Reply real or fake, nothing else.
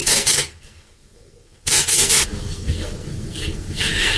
fake